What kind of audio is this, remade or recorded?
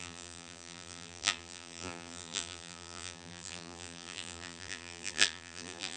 remade